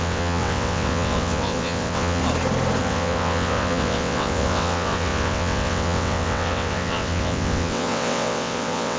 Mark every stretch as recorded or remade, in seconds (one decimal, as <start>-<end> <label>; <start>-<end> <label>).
0.0-2.2 remade; 2.2-2.8 recorded; 2.8-9.0 remade